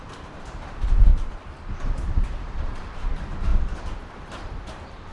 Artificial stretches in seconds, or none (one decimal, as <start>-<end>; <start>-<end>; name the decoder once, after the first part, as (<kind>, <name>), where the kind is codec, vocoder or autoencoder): 0.0-3.5 (vocoder, BigVGAN v2); 4.3-5.1